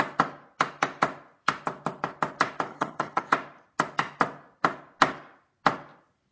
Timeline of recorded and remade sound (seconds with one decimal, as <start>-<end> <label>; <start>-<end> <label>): 0.0-2.7 recorded; 2.7-3.2 remade; 3.2-6.3 recorded